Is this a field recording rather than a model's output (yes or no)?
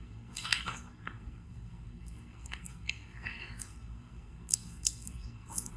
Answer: no